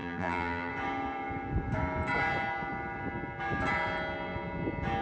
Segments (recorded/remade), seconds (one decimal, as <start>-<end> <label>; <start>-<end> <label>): 0.0-0.7 remade; 0.7-5.0 recorded